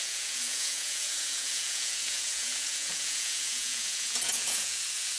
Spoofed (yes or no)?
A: yes